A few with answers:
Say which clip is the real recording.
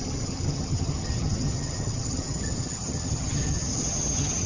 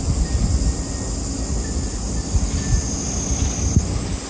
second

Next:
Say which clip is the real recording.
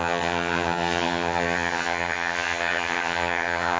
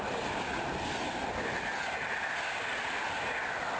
second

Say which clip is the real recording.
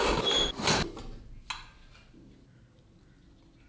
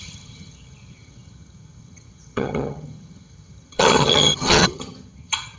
first